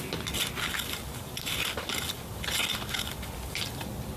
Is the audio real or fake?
real